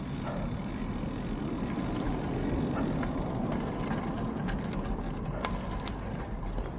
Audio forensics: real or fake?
real